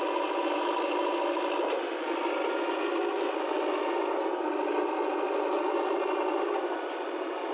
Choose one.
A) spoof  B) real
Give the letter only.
B